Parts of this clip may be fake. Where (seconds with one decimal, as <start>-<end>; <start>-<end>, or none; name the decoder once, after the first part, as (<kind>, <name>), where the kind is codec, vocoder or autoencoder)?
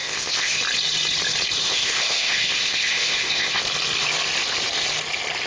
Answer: 0.0-0.6 (codec, ZipCodec); 1.6-3.6